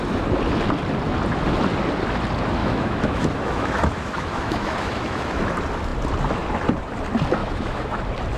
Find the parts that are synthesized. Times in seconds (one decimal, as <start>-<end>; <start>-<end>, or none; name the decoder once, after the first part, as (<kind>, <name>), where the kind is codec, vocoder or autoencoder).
2.6-5.4 (autoencoder, DAC-VAE); 7.4-8.0